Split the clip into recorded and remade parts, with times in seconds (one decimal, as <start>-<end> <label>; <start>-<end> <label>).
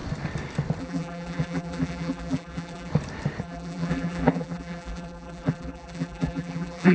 0.0-0.8 recorded; 0.8-2.9 remade; 2.9-3.4 recorded; 3.4-6.9 remade